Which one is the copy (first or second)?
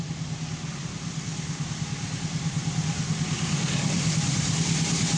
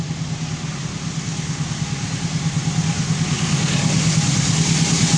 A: first